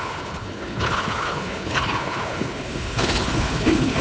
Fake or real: fake